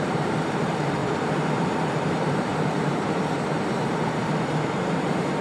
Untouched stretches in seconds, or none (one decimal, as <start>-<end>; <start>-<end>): none